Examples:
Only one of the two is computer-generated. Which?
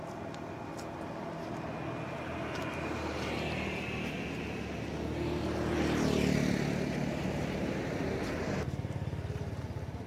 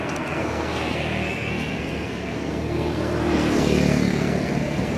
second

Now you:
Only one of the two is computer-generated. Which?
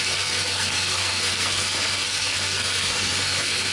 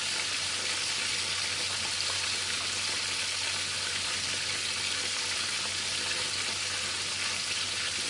first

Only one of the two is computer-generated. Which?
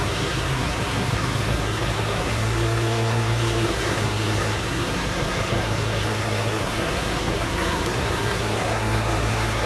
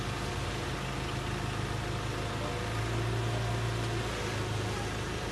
first